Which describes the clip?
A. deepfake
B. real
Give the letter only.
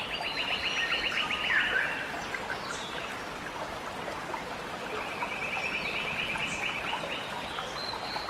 B